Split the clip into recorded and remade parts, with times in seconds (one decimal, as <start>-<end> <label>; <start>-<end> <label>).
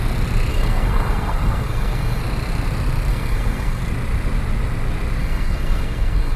0.0-0.5 recorded; 0.5-2.2 remade; 2.2-3.1 recorded; 3.1-3.8 remade; 3.8-5.2 recorded; 5.2-6.4 remade